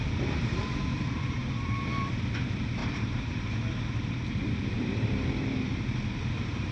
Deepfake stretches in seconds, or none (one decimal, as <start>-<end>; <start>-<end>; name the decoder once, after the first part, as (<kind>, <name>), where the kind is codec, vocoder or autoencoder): 0.0-6.7 (vocoder, BigVGAN v2)